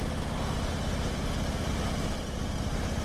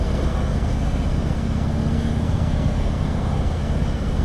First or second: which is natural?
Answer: first